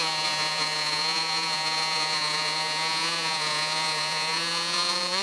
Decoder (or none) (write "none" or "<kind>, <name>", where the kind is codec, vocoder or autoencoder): vocoder, Vocos